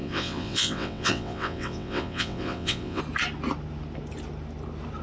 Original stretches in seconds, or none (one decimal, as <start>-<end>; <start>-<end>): 3.0-5.0